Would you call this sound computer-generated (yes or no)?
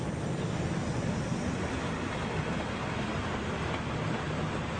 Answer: no